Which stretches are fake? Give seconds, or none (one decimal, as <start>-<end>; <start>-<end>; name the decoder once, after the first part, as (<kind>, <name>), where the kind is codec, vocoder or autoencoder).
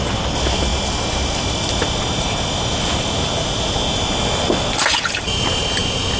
none